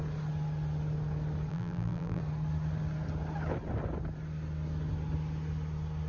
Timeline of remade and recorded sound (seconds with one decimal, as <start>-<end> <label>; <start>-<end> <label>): 0.0-1.5 recorded; 1.5-2.2 remade; 2.2-6.1 recorded